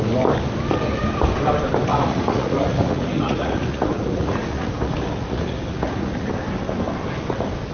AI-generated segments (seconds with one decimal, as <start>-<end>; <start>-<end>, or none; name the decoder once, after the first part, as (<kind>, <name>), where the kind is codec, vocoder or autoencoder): 1.9-6.3 (vocoder, Vocos)